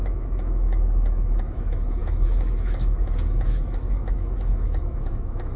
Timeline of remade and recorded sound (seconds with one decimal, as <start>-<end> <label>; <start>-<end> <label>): 0.0-5.6 remade